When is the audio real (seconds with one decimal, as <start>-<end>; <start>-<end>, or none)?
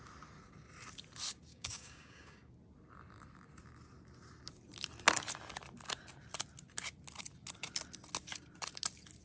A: 0.0-1.5; 2.5-9.2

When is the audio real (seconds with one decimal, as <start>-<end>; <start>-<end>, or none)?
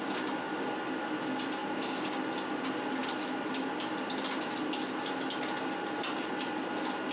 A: 0.0-1.6; 2.2-7.1